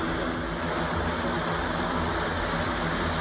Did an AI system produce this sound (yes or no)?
no